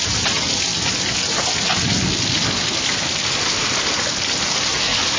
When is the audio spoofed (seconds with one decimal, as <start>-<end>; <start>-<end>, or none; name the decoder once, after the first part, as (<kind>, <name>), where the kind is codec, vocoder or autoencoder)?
none